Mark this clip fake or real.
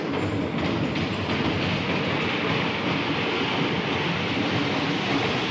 real